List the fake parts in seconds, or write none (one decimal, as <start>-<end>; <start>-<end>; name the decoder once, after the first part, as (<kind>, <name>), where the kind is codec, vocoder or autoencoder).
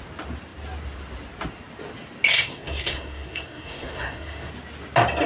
2.3-4.5 (codec, SNAC)